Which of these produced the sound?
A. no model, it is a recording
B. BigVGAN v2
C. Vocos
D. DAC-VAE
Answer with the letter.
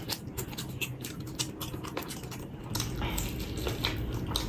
A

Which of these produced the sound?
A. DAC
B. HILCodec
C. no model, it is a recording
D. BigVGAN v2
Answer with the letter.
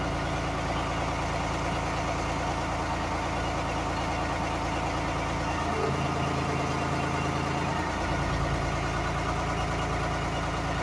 C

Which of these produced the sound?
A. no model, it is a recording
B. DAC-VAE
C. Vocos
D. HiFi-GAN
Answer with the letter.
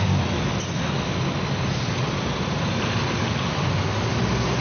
A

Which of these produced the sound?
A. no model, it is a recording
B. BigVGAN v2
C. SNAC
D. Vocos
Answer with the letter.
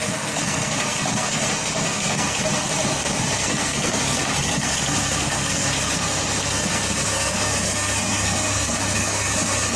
C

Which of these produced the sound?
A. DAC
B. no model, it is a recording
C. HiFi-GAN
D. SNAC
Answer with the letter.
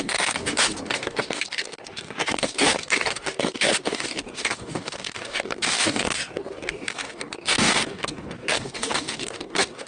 A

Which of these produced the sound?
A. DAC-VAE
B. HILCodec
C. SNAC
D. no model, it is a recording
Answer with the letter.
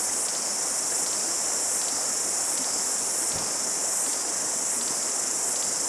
D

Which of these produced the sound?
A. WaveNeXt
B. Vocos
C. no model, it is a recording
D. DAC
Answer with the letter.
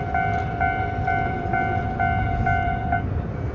C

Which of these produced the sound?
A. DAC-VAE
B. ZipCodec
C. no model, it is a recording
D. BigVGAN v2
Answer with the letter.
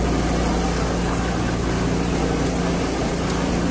C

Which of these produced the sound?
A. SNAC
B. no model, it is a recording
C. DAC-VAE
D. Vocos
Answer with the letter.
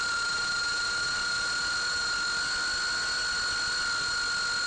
B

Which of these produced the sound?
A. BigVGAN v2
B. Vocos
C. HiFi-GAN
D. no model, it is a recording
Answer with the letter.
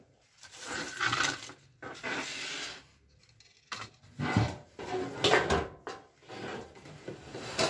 D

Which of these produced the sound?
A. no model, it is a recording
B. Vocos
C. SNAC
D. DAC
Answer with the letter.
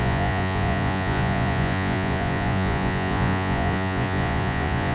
B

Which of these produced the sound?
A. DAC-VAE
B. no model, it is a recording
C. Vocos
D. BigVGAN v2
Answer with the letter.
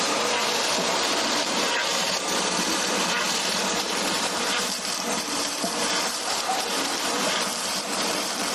D